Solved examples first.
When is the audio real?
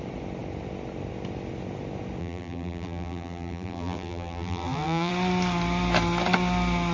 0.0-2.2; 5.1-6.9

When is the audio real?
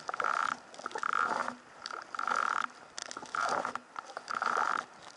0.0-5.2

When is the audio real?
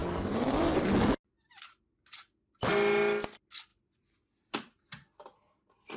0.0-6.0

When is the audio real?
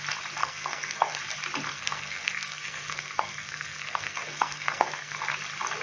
0.0-0.4; 1.2-1.7; 5.2-5.8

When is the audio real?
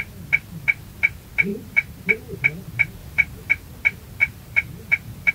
0.0-1.5; 2.0-3.0; 3.5-4.2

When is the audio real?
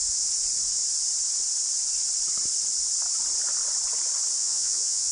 0.0-4.4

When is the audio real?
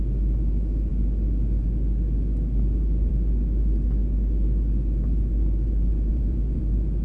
0.0-6.1; 6.6-7.0